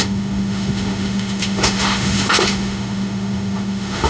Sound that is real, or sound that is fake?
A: fake